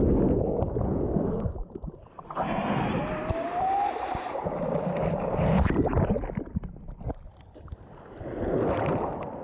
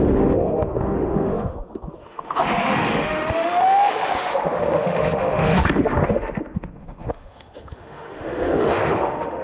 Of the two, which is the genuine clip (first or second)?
first